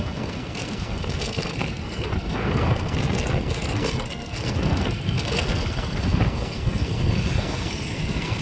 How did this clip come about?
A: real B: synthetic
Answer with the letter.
B